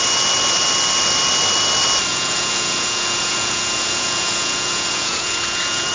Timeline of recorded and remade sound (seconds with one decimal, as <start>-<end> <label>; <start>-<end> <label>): 0.0-2.1 recorded; 2.1-5.9 remade

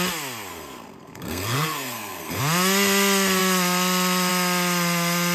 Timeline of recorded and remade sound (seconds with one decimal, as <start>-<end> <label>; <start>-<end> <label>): 0.0-0.5 recorded; 0.5-2.4 remade; 2.4-5.3 recorded